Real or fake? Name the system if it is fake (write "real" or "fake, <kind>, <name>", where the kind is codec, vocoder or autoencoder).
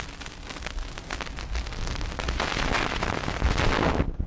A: real